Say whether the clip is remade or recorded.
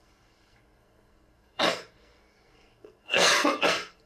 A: remade